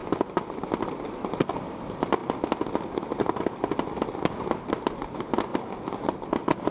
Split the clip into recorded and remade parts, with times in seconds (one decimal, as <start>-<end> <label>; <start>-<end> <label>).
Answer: 0.0-6.7 recorded